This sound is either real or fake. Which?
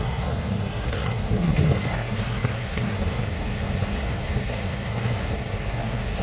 fake